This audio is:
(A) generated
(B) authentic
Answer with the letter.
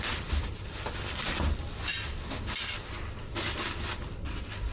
B